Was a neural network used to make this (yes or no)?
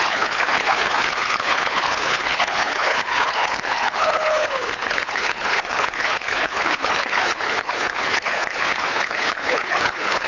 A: yes